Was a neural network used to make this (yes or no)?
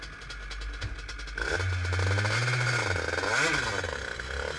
no